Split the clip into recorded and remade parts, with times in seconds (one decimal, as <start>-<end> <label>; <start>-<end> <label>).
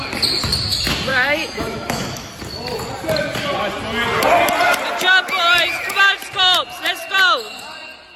0.0-1.1 recorded; 1.1-2.3 remade; 2.3-8.2 recorded